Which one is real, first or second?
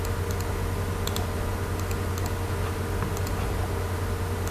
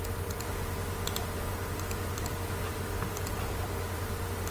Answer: first